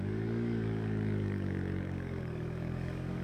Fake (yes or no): yes